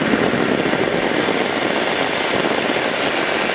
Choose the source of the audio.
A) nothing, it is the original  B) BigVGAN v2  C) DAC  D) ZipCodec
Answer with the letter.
A